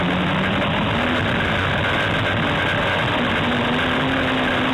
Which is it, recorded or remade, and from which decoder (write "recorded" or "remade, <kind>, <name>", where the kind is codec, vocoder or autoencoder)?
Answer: recorded